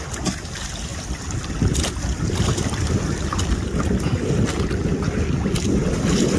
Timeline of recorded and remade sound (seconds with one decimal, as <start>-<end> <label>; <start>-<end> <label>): 0.0-0.9 recorded; 0.9-4.3 remade; 4.3-6.4 recorded